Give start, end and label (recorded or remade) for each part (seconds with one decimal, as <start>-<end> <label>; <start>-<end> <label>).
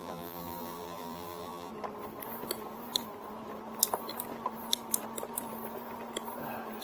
0.0-1.7 remade; 1.7-6.8 recorded